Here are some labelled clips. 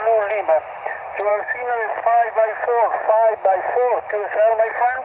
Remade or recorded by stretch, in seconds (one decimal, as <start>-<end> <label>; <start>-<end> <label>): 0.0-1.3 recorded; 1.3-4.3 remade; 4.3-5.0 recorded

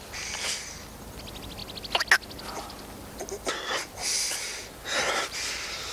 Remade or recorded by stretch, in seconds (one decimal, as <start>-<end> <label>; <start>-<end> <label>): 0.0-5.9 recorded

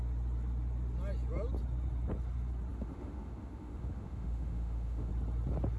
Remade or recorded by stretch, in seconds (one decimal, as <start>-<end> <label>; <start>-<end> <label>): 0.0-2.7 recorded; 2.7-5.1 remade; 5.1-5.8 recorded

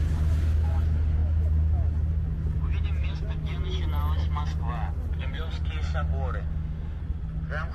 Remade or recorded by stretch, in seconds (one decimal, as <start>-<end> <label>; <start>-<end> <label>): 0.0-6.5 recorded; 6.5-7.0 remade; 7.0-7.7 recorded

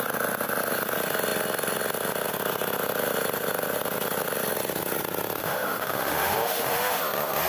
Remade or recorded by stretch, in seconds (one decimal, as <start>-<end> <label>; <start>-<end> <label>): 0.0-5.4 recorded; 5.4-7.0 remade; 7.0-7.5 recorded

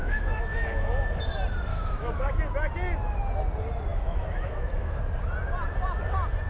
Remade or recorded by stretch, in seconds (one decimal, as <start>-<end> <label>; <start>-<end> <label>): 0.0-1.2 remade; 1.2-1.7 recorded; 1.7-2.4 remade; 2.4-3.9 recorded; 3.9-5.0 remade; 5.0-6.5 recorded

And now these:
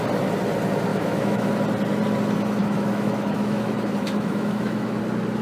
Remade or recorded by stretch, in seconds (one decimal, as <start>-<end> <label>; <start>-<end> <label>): 0.0-0.9 recorded; 0.9-1.5 remade; 1.5-2.6 recorded; 2.6-5.0 remade; 5.0-5.4 recorded